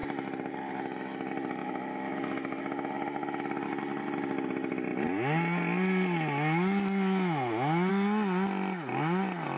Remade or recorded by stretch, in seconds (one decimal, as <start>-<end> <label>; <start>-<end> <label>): 0.0-1.6 recorded; 1.6-2.6 remade; 2.6-9.6 recorded